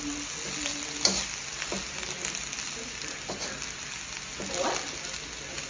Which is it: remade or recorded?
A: recorded